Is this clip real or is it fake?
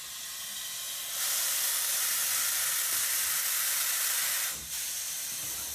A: real